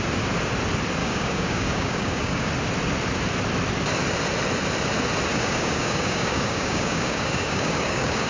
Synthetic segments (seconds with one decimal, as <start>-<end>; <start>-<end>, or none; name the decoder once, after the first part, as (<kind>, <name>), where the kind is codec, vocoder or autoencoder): 1.0-2.5 (codec, DAC); 5.3-8.3